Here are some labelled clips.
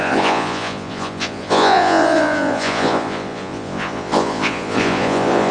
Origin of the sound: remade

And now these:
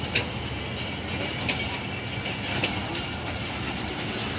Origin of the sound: recorded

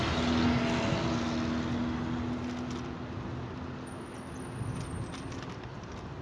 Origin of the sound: recorded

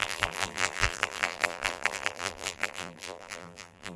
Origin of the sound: remade